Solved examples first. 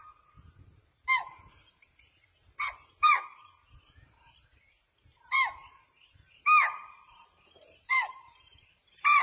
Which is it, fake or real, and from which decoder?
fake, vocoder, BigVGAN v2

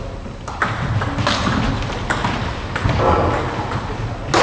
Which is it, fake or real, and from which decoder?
real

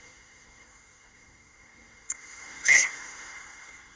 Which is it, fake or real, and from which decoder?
fake, codec, SNAC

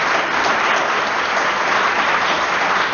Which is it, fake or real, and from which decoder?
real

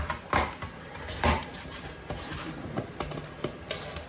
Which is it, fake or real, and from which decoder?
real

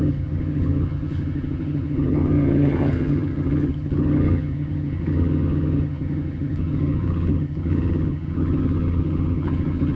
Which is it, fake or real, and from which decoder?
fake, vocoder, HiFi-GAN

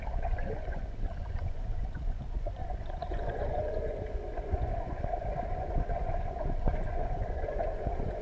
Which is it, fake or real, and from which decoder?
fake, vocoder, Vocos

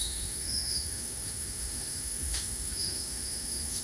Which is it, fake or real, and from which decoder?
fake, autoencoder, DAC-VAE